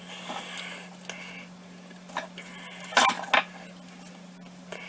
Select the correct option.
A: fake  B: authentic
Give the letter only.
B